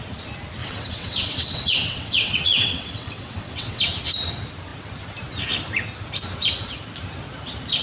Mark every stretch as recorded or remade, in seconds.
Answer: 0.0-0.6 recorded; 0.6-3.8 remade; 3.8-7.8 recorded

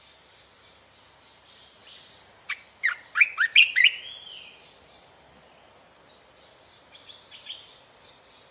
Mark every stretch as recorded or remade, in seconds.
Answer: 0.0-8.5 recorded

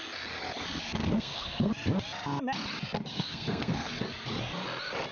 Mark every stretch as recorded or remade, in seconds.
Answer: 0.0-1.1 recorded; 1.1-1.7 remade; 1.7-3.1 recorded; 3.1-3.9 remade; 3.9-5.1 recorded

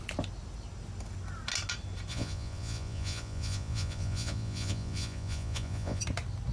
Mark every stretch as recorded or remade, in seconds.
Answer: 0.0-2.1 recorded; 2.1-6.0 remade; 6.0-6.5 recorded

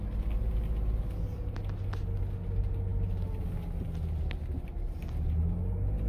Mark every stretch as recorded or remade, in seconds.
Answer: 0.0-6.1 recorded

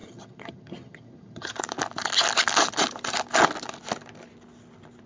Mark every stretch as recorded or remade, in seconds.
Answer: 0.0-1.6 remade; 1.6-5.1 recorded

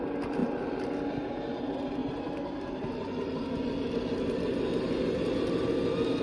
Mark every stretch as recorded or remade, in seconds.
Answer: 0.0-6.2 recorded

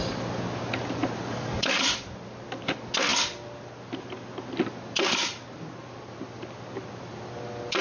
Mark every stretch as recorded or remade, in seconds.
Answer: 0.0-1.3 recorded; 1.3-1.8 remade; 1.8-7.8 recorded